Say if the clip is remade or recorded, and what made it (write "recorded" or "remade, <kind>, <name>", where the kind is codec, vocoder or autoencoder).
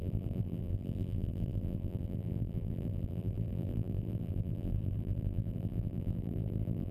remade, vocoder, BigVGAN v2